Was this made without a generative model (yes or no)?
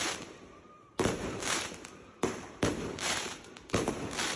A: no